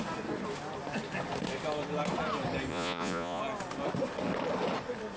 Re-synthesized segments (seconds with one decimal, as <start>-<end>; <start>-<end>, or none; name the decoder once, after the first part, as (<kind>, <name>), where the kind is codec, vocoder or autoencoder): 2.7-3.4 (vocoder, Vocos)